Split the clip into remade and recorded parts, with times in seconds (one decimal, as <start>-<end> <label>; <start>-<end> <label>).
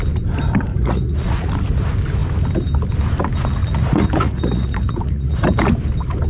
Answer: 0.0-0.7 recorded; 0.7-1.5 remade; 1.5-3.6 recorded; 3.6-5.7 remade; 5.7-6.3 recorded